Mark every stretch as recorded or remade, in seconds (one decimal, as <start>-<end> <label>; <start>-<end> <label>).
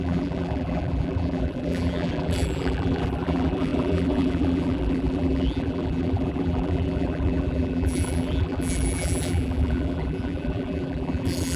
0.0-11.6 remade